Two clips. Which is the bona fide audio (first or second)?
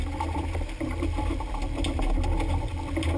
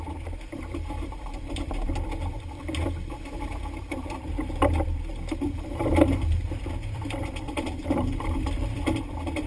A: first